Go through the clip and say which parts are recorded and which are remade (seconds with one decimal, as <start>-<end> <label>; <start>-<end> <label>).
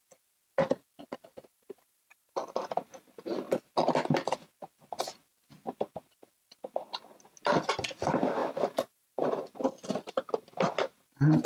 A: 0.0-1.5 recorded; 1.5-3.6 remade; 3.6-8.4 recorded; 8.4-9.1 remade; 9.1-11.4 recorded